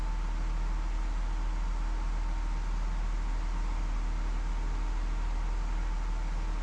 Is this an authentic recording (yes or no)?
yes